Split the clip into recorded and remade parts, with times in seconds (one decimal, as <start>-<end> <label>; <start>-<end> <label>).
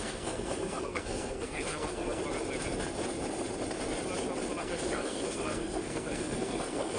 0.0-2.2 remade; 2.2-4.6 recorded; 4.6-7.0 remade